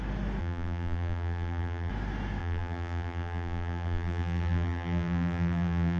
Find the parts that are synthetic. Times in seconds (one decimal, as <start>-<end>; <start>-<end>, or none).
0.4-1.9; 2.4-6.0